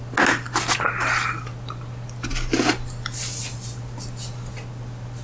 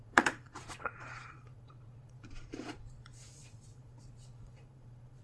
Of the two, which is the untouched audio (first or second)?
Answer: first